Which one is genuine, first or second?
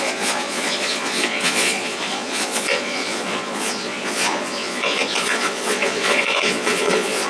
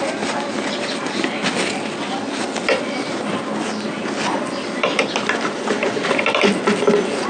second